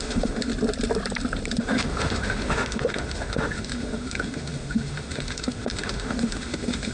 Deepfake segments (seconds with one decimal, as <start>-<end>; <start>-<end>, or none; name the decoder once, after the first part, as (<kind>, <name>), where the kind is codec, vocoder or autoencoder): 0.0-0.5 (autoencoder, DAC-VAE); 1.6-6.9